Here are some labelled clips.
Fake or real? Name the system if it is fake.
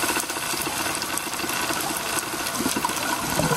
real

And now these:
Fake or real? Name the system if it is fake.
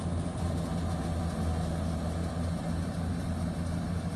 real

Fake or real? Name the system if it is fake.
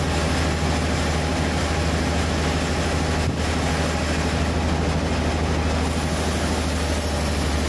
real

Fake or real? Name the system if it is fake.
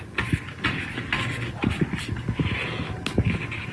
real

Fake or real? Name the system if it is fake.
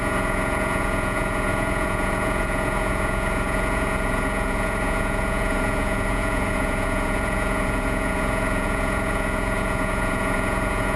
fake, vocoder, Vocos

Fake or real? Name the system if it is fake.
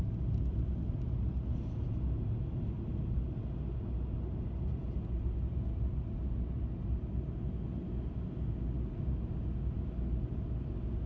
real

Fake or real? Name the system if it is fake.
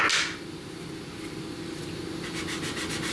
real